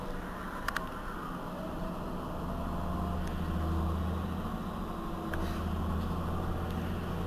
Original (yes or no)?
yes